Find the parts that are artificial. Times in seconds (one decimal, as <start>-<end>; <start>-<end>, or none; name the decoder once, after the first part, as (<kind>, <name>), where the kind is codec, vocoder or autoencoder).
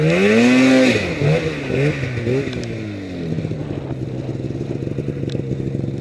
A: none